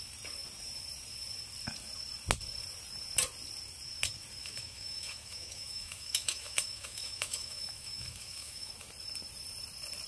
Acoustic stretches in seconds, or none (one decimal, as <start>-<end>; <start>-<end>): 0.0-4.4; 8.7-10.1